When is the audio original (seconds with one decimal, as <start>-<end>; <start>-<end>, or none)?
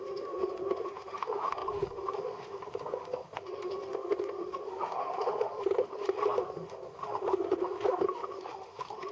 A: none